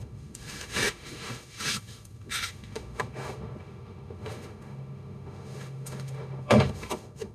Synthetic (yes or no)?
yes